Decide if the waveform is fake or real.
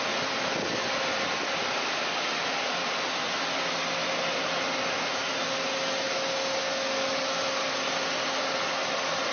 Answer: real